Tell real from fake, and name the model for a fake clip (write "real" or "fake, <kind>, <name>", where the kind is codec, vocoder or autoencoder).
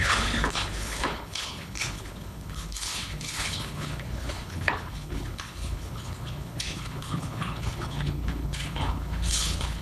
fake, codec, HILCodec